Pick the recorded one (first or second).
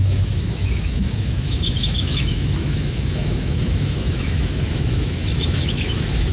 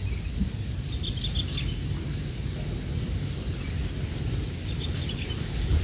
second